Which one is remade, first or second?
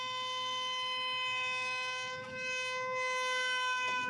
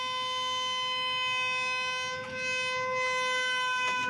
first